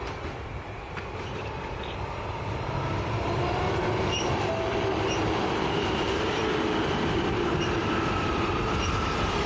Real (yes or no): no